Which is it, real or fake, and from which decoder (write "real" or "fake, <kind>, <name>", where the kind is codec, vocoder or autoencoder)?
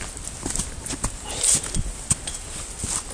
real